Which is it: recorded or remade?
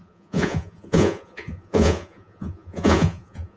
remade